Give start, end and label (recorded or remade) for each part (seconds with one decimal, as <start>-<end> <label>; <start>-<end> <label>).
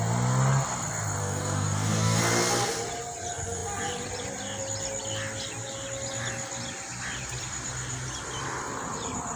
0.0-1.2 recorded; 1.2-2.2 remade; 2.2-9.4 recorded